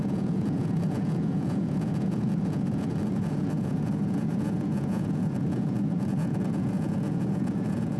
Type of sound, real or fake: fake